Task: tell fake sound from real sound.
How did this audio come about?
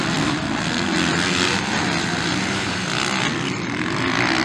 real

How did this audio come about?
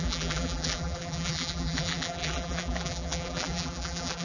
fake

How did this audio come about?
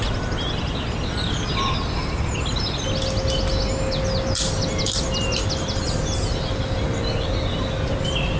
real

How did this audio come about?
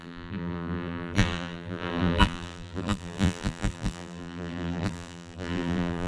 fake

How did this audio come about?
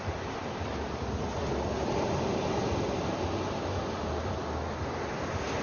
real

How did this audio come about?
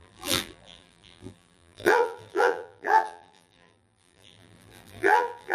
fake